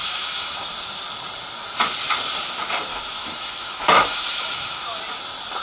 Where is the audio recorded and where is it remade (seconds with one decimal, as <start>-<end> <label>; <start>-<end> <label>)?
0.0-0.7 remade; 0.7-2.9 recorded; 2.9-5.0 remade; 5.0-5.6 recorded